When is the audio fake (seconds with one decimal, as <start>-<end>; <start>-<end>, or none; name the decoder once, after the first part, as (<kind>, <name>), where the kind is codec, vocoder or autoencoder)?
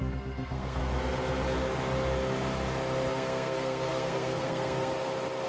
0.0-0.8 (codec, SNAC); 3.1-4.9